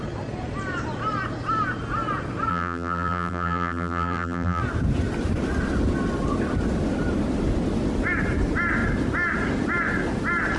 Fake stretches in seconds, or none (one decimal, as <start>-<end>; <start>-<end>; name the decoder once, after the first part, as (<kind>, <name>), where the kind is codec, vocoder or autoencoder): 2.5-4.6 (vocoder, BigVGAN v2)